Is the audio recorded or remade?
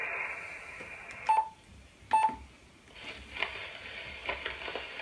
recorded